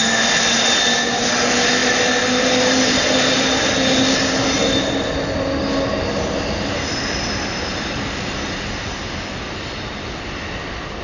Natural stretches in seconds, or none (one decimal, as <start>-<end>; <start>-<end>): 0.0-11.0